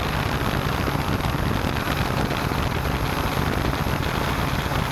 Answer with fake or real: real